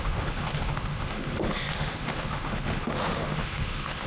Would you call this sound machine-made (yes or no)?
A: yes